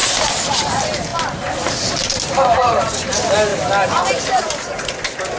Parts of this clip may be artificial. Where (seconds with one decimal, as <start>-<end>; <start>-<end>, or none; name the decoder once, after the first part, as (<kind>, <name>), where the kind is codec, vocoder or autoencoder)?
0.0-0.7 (vocoder, BigVGAN v2); 2.6-3.1; 3.5-4.4